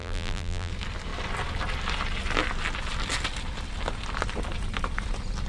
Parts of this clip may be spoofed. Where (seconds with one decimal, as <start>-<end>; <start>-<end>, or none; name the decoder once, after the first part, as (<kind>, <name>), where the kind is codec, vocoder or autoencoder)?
0.0-0.7 (vocoder, BigVGAN v2)